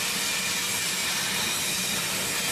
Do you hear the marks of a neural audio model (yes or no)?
no